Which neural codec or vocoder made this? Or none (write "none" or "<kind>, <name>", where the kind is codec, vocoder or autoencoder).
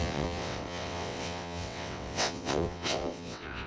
vocoder, WaveNeXt